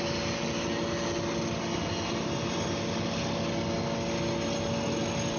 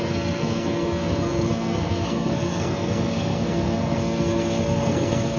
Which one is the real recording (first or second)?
first